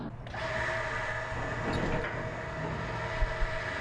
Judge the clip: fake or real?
real